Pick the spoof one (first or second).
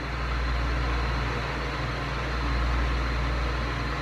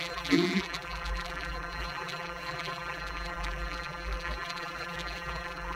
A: second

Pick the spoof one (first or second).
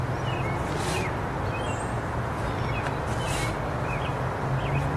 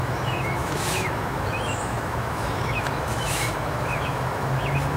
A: second